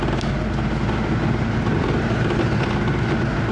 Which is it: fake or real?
real